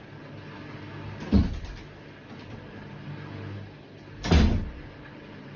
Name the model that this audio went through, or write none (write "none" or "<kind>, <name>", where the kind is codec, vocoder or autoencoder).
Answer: none